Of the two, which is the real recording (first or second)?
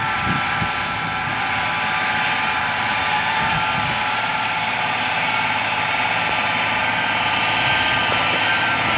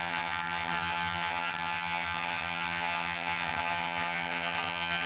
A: first